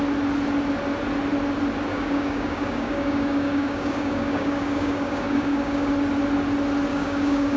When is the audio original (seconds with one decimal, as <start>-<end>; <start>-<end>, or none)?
0.0-1.9; 5.9-6.9